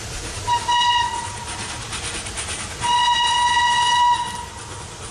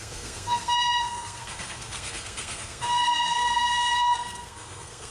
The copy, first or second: second